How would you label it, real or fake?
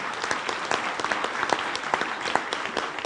fake